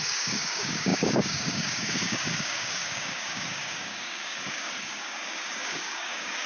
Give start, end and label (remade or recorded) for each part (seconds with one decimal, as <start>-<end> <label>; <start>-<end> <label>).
0.0-6.5 remade